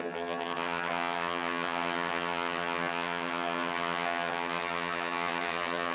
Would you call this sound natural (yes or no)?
no